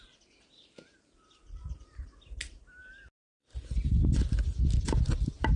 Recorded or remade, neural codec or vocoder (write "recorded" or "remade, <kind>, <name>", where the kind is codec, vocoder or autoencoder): recorded